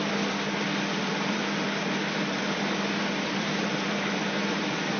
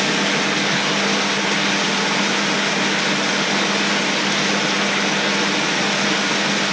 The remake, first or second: first